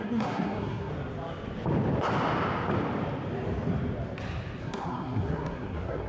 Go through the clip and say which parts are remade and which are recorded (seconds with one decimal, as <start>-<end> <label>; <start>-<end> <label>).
0.0-0.9 remade; 0.9-4.6 recorded; 4.6-6.1 remade